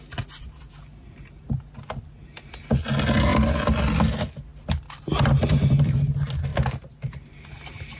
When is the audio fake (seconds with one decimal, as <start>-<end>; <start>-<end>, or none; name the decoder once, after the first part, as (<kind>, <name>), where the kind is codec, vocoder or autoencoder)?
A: none